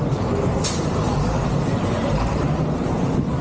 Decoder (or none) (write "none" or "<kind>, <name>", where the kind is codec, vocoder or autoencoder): vocoder, BigVGAN v2